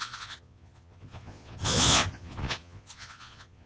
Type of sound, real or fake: fake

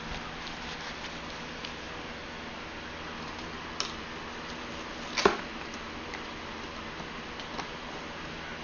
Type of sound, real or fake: real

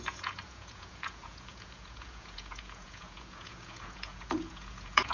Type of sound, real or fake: fake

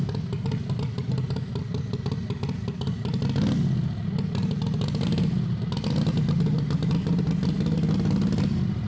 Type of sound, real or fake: real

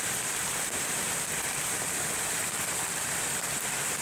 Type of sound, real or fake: real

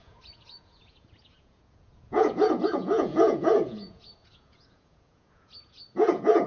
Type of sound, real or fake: fake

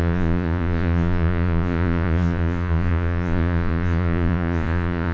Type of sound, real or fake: fake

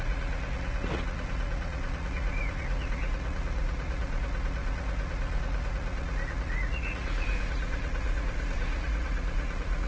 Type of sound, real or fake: fake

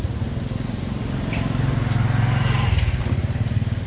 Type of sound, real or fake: real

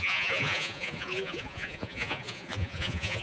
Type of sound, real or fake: fake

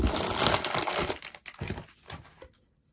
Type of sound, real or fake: real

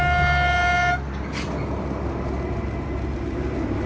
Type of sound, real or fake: real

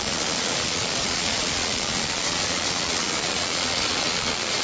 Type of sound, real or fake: fake